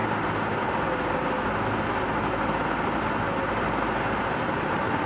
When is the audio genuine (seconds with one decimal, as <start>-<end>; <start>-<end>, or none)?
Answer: 0.0-5.1